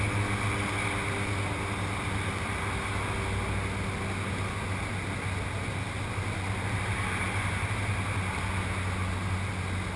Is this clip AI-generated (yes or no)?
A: no